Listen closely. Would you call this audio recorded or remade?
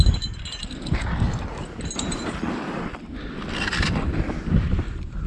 recorded